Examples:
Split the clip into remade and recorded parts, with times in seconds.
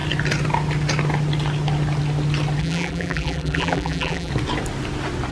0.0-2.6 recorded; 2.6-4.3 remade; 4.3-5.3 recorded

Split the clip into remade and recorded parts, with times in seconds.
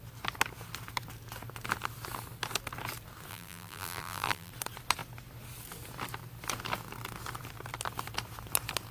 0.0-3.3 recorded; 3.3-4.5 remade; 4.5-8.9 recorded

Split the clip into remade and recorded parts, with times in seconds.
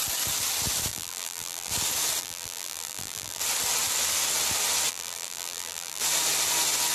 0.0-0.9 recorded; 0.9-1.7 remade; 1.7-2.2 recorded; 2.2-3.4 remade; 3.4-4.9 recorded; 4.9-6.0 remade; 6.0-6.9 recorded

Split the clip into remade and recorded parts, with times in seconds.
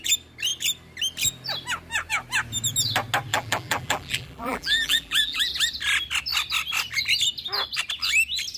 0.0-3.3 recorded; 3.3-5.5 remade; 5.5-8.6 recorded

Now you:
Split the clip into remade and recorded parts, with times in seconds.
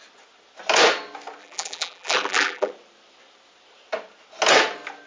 0.0-1.4 recorded; 1.4-2.7 remade; 2.7-5.1 recorded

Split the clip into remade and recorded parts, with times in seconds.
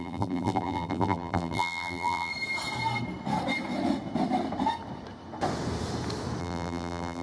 0.0-2.3 remade; 2.3-6.4 recorded; 6.4-7.2 remade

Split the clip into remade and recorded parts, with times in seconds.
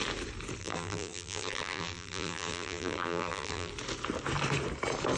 0.0-0.6 recorded; 0.6-3.7 remade; 3.7-5.2 recorded